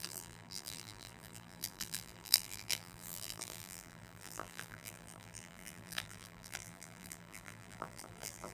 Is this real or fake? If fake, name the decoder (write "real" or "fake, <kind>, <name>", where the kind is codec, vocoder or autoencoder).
fake, vocoder, BigVGAN v2